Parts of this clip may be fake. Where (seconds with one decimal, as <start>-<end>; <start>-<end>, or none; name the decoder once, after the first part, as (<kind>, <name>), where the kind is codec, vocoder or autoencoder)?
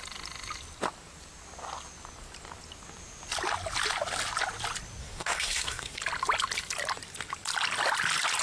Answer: 5.0-6.0 (codec, SNAC)